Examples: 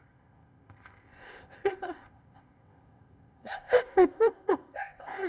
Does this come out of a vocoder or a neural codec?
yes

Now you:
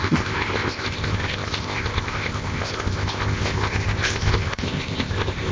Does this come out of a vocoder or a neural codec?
yes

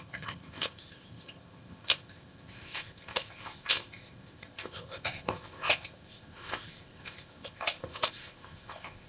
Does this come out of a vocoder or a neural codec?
yes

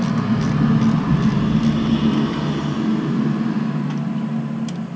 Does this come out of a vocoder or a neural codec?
no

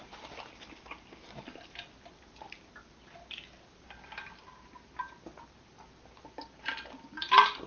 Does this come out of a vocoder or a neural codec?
no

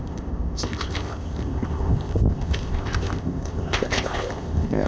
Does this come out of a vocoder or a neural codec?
yes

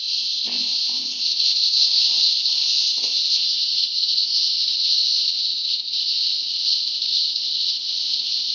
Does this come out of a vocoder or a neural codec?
yes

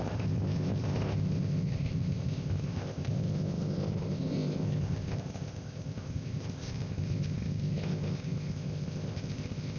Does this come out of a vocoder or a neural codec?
yes